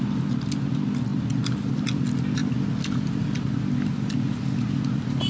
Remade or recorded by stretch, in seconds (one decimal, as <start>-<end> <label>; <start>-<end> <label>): 0.0-5.3 recorded